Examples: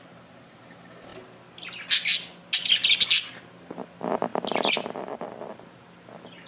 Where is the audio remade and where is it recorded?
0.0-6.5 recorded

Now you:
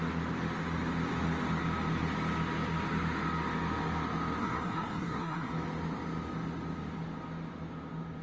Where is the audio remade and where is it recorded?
0.0-4.4 recorded; 4.4-5.5 remade; 5.5-8.2 recorded

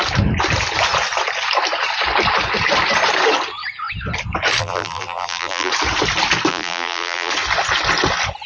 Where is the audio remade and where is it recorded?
0.0-4.6 recorded; 4.6-5.7 remade; 5.7-6.5 recorded; 6.5-7.3 remade; 7.3-8.5 recorded

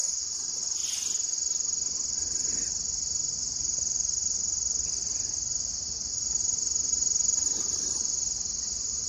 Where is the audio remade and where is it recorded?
0.0-0.8 remade; 0.8-1.4 recorded; 1.4-9.1 remade

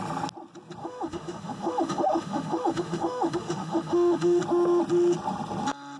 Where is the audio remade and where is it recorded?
0.0-0.8 recorded; 0.8-4.4 remade; 4.4-6.0 recorded

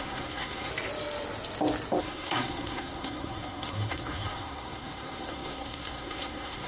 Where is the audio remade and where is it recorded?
0.0-0.7 remade; 0.7-2.0 recorded; 2.0-6.7 remade

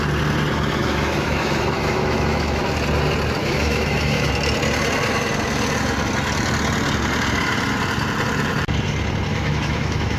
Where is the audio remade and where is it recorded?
0.0-0.8 recorded; 0.8-2.6 remade; 2.6-3.4 recorded; 3.4-4.3 remade; 4.3-9.3 recorded; 9.3-10.2 remade